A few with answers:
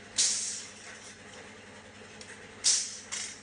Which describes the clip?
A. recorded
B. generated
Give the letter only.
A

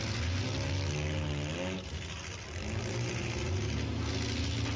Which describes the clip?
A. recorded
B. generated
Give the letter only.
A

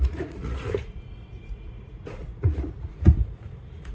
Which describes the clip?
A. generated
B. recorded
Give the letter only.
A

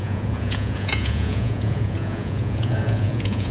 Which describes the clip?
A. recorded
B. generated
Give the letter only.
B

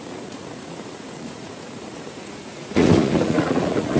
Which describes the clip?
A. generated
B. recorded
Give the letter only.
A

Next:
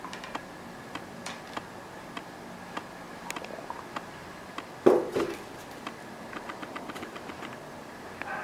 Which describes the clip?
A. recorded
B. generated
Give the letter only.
A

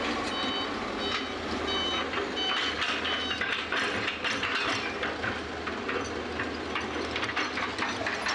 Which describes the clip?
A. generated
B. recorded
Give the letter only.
B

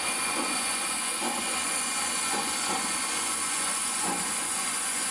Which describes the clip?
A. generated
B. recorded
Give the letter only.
A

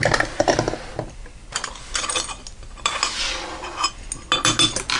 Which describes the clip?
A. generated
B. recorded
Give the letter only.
B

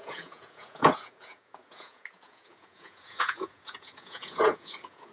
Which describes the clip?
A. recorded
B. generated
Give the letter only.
B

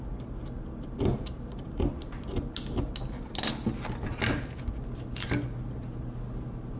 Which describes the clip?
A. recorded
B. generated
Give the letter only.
A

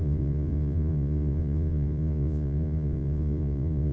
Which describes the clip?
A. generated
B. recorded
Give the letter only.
A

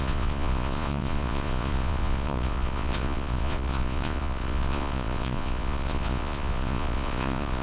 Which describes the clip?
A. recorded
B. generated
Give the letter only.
B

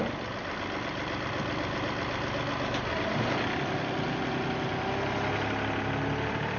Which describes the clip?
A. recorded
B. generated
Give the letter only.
A